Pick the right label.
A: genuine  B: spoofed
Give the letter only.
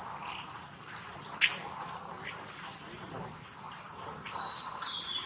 A